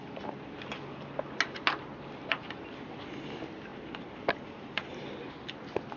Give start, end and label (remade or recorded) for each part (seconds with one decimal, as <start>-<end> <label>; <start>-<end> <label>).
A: 0.0-6.0 recorded